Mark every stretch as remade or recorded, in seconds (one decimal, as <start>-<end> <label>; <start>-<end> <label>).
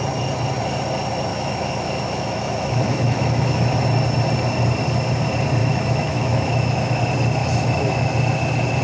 0.0-1.3 recorded; 1.3-3.8 remade; 3.8-5.6 recorded; 5.6-7.0 remade; 7.0-7.4 recorded; 7.4-8.1 remade; 8.1-8.8 recorded